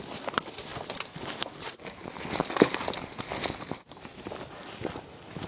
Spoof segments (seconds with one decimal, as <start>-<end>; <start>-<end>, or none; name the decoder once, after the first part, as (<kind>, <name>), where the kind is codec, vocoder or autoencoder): none